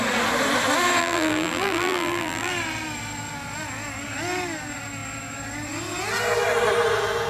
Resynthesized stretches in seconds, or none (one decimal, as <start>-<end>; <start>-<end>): 1.0-2.5